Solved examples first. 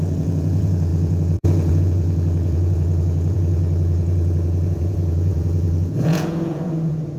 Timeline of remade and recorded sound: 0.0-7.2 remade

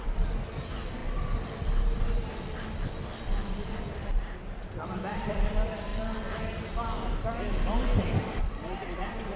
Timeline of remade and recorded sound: 0.0-1.0 remade; 1.0-3.9 recorded; 3.9-5.9 remade; 5.9-8.4 recorded; 8.4-9.4 remade